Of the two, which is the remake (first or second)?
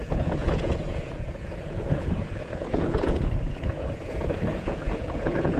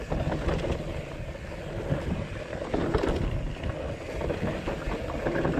first